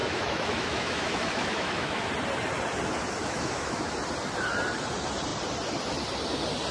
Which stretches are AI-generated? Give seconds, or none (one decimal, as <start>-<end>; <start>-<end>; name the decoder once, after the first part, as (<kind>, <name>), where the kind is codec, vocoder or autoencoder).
0.0-2.1 (autoencoder, DAC-VAE); 3.2-3.8